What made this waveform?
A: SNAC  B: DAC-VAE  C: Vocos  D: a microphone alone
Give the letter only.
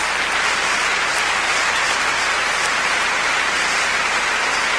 D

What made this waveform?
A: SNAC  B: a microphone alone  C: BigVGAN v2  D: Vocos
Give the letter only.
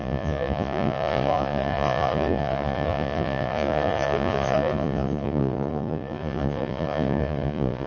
D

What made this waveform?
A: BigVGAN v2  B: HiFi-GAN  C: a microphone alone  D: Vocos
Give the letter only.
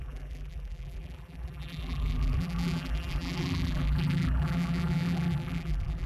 A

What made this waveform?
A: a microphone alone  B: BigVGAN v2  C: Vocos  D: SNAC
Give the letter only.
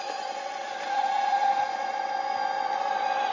A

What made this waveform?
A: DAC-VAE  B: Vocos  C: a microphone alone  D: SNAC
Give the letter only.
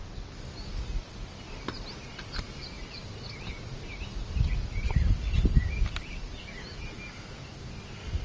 C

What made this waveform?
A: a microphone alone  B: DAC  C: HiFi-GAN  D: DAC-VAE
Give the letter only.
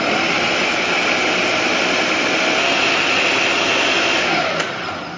A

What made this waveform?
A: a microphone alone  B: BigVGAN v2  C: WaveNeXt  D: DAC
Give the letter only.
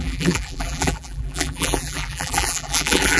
B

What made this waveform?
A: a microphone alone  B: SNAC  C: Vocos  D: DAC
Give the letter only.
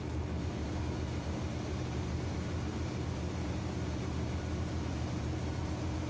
A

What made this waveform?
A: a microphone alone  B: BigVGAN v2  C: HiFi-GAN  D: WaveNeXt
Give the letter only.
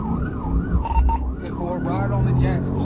A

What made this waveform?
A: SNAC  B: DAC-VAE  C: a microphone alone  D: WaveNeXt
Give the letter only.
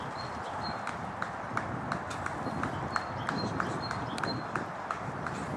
C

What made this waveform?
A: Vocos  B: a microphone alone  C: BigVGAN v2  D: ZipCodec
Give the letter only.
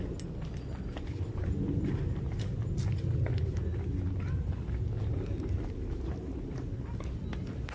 B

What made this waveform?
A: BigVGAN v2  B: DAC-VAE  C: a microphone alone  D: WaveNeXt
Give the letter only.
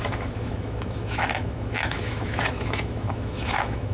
B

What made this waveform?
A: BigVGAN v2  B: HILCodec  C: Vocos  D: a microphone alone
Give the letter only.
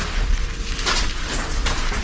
A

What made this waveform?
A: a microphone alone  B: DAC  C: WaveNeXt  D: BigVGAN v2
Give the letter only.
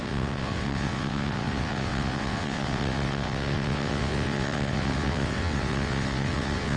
C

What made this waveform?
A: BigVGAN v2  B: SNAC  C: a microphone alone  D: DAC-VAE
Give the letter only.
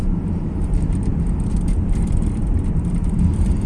A